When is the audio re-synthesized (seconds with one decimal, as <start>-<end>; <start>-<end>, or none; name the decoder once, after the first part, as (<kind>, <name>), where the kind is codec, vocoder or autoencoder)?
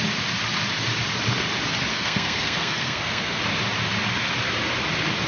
1.9-3.4 (codec, SNAC)